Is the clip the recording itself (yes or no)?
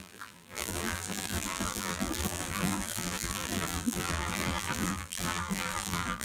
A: no